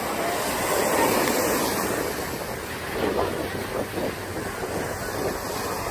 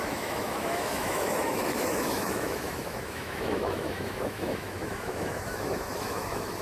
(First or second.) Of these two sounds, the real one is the first